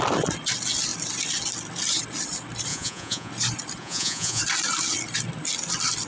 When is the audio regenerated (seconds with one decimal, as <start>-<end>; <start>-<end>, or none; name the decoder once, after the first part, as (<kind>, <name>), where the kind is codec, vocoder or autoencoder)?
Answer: 2.7-3.3 (vocoder, Vocos); 3.8-4.4